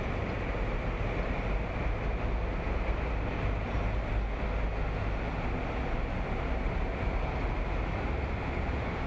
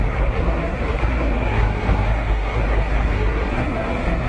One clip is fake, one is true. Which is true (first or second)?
first